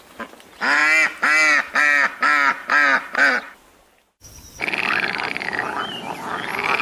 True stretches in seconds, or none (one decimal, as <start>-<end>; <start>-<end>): 0.0-6.8